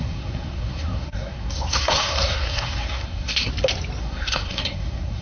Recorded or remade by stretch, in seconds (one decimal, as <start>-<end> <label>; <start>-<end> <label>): 0.0-3.5 remade; 3.5-4.0 recorded; 4.0-5.2 remade